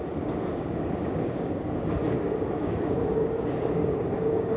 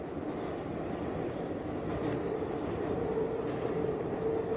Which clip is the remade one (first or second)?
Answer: first